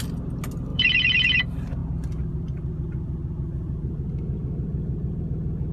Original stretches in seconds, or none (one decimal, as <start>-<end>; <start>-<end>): 0.0-0.7; 1.4-1.8; 5.2-5.7